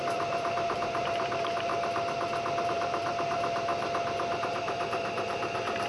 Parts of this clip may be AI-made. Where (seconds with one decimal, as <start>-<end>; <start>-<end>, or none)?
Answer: 0.0-1.7; 2.6-3.7; 4.4-5.9